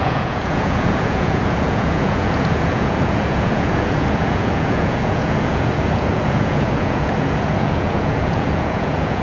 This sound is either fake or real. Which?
fake